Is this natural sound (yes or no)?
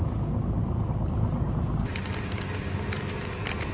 yes